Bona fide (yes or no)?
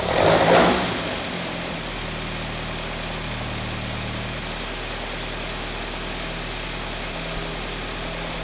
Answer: yes